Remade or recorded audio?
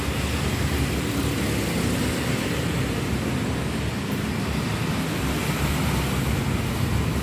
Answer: recorded